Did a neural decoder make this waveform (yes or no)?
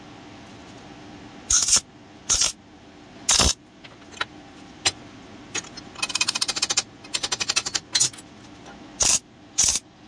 no